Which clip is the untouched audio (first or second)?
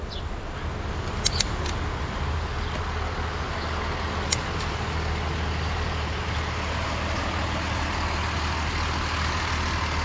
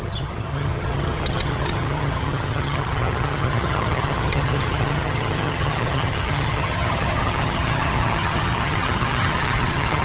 first